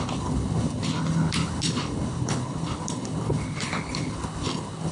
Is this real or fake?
fake